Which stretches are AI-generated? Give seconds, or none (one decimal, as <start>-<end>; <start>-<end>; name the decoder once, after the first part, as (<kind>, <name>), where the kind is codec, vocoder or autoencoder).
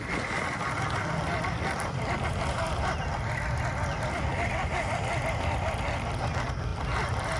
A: none